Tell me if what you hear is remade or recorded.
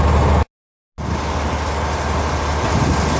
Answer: recorded